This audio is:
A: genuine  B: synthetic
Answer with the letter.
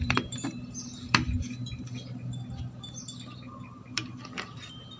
B